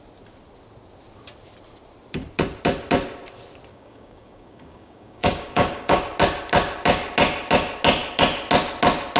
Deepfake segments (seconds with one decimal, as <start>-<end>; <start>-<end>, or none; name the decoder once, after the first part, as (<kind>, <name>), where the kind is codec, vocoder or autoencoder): 3.7-6.0 (codec, DAC)